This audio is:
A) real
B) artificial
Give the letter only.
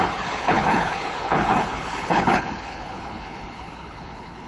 B